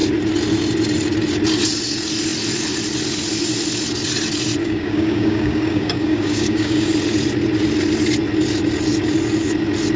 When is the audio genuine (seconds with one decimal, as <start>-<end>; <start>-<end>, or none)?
0.0-4.6; 6.9-10.0